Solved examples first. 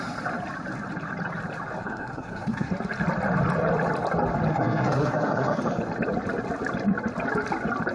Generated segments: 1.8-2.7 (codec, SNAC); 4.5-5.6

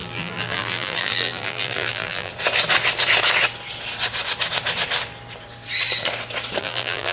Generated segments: 0.0-2.3 (vocoder, BigVGAN v2); 6.6-7.1

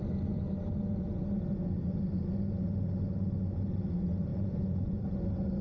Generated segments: 4.3-5.0 (vocoder, Vocos)

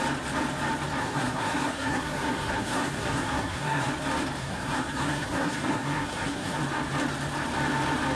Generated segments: 1.0-3.9 (codec, SNAC); 4.4-6.6

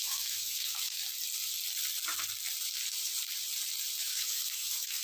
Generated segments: 0.0-1.0 (autoencoder, DAC-VAE); 4.0-5.0

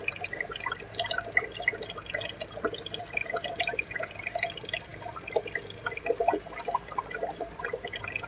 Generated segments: none